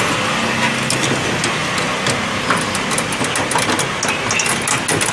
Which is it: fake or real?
real